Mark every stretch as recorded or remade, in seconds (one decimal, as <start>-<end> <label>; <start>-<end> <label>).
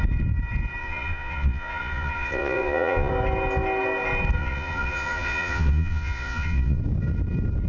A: 0.0-0.8 recorded; 0.8-3.1 remade; 3.1-4.4 recorded; 4.4-6.8 remade; 6.8-7.7 recorded